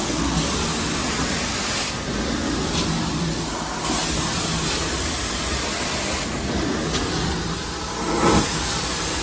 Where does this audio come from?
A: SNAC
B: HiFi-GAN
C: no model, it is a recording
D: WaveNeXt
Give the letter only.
C